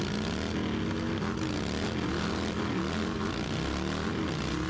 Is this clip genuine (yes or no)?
yes